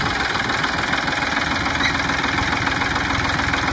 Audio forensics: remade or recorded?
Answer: recorded